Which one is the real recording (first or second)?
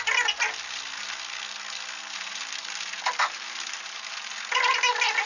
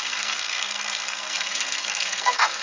first